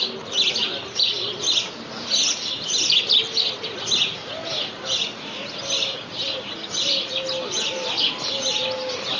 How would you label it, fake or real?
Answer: real